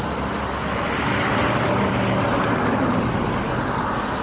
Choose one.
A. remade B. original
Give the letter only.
B